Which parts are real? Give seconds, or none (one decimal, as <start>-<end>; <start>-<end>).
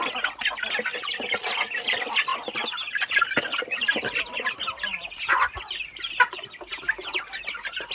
0.0-0.9; 1.5-2.3; 6.7-7.9